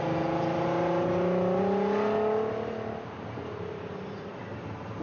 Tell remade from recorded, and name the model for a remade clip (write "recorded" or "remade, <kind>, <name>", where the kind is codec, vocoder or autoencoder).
recorded